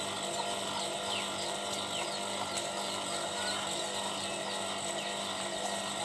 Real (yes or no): yes